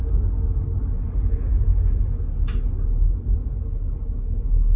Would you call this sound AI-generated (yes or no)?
no